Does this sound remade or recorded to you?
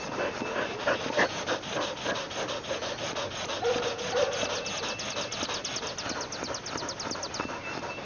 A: recorded